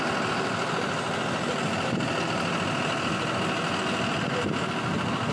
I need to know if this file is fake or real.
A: real